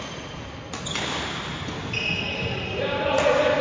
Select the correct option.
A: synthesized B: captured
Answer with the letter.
B